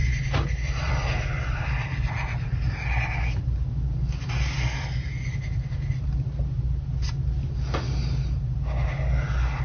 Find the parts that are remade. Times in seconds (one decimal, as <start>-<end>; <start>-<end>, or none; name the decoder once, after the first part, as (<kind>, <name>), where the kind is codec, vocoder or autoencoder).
0.0-0.9 (vocoder, BigVGAN v2)